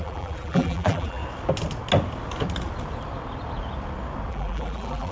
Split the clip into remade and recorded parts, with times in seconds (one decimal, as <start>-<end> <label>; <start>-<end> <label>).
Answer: 0.0-1.2 remade; 1.2-4.3 recorded; 4.3-5.1 remade